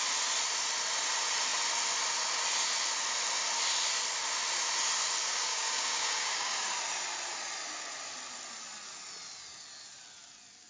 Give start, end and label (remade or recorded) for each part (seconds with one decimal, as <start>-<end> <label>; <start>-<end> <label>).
0.0-5.3 recorded; 5.3-6.7 remade; 6.7-10.7 recorded